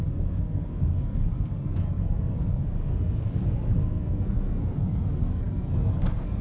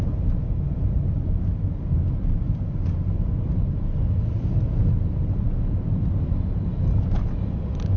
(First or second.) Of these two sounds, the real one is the second